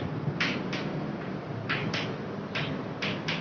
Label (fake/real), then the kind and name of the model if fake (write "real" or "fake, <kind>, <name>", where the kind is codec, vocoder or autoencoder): real